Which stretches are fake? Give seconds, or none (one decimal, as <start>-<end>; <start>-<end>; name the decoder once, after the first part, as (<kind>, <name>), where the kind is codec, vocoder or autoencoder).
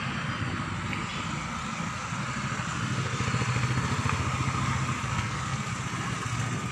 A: 5.1-5.7 (codec, SNAC)